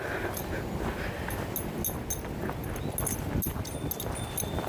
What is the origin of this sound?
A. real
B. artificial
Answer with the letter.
A